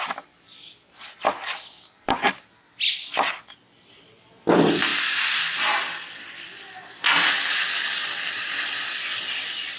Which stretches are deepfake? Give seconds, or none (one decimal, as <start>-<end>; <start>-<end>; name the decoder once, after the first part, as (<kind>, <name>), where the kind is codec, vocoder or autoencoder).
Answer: 0.0-4.9 (vocoder, BigVGAN v2); 7.9-9.8